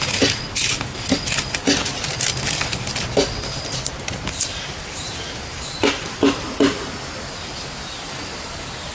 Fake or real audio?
real